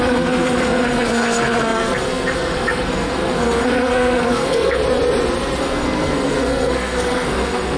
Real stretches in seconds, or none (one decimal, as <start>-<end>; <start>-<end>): 4.8-5.6